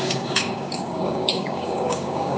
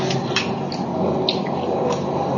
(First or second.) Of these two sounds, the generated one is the first